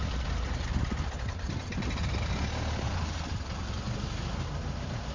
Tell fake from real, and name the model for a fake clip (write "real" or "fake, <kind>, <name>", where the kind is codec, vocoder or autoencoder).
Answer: real